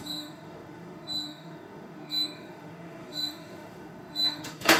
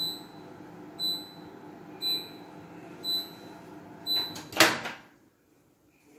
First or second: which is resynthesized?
first